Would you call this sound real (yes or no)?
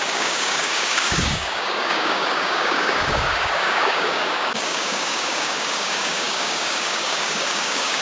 no